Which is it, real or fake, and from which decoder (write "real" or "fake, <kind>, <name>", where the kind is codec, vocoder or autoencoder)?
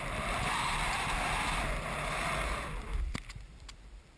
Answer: real